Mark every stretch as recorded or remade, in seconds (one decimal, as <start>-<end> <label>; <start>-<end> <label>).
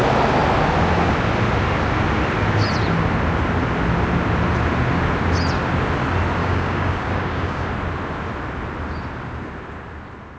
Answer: 0.0-6.4 recorded; 6.4-7.7 remade; 7.7-10.4 recorded